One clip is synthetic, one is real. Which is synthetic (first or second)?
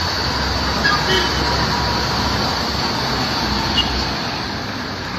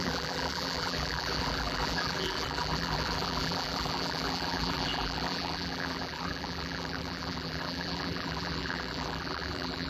second